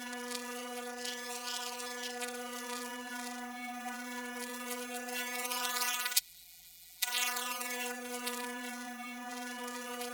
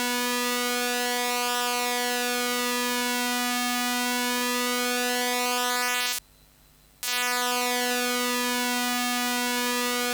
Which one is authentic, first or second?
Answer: second